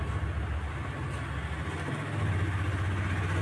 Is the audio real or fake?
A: real